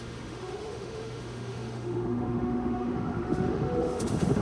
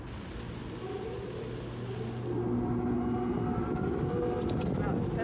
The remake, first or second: first